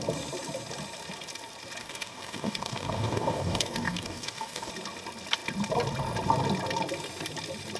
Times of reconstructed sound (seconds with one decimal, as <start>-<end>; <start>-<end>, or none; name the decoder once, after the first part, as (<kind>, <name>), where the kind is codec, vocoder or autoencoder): 1.8-4.7 (codec, DAC)